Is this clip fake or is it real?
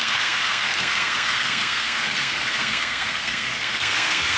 fake